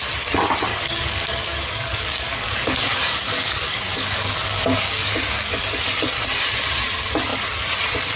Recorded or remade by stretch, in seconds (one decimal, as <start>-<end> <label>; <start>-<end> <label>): 0.0-0.7 recorded; 0.7-5.6 remade; 5.6-8.2 recorded